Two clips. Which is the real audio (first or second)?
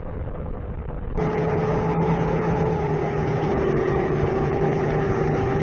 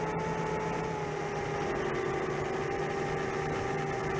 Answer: second